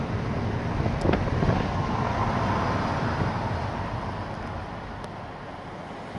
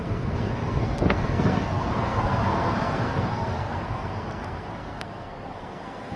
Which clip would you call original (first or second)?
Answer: first